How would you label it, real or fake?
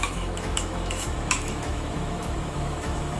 fake